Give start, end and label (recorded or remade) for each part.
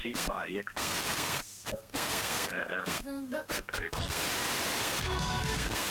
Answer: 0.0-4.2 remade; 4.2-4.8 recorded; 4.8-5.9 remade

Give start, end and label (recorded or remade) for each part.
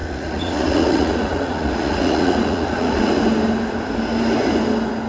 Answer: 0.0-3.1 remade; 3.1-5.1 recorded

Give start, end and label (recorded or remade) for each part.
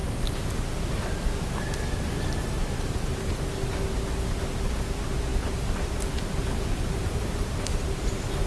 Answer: 0.0-8.5 recorded